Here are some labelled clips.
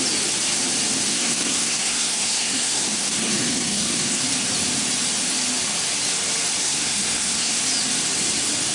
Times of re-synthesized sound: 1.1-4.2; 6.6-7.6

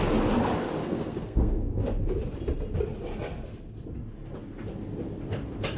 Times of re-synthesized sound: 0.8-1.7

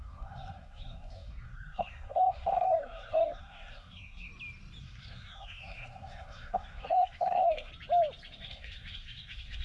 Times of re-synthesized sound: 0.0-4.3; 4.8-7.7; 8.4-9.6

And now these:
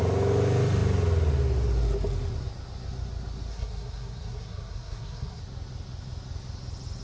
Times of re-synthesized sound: 3.5-5.4

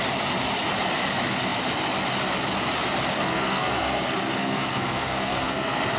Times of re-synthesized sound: 3.2-6.0

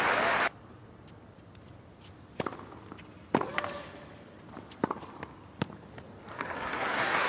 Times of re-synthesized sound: 6.3-7.3